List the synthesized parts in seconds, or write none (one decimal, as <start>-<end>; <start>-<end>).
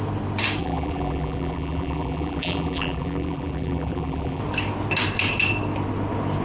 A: 0.6-4.4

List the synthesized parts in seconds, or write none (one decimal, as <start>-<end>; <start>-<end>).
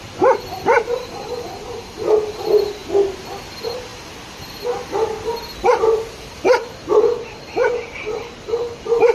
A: 0.0-2.8; 3.4-3.9; 5.6-9.1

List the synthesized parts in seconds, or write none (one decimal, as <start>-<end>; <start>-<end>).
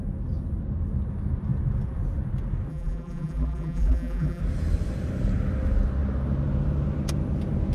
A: 2.7-4.4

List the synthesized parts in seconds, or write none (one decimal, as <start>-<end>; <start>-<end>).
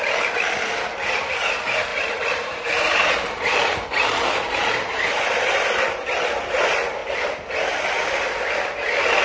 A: 1.9-5.2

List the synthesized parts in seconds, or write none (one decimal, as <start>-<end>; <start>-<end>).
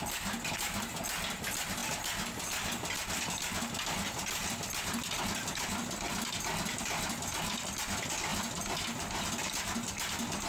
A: none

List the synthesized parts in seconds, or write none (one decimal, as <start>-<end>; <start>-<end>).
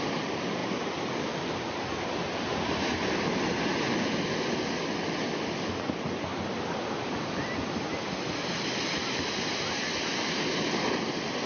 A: none